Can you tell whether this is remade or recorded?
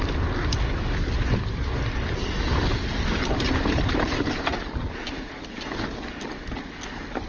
recorded